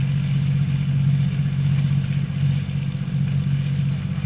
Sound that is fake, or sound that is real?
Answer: real